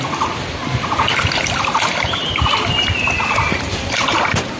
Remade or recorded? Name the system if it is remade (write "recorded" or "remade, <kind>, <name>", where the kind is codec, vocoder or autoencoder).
recorded